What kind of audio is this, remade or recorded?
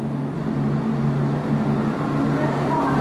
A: recorded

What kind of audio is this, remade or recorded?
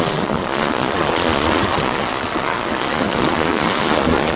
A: remade